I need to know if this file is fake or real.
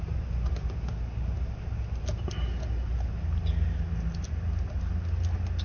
real